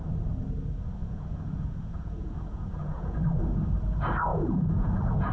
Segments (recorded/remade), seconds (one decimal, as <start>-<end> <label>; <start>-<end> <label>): 0.0-1.0 recorded; 1.0-3.2 remade; 3.2-4.3 recorded; 4.3-5.3 remade